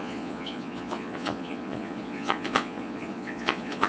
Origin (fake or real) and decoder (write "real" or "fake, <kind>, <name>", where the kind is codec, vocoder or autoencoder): fake, vocoder, Vocos